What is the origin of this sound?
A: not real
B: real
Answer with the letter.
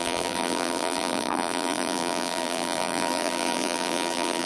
A